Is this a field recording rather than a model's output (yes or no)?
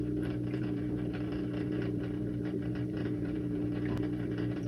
no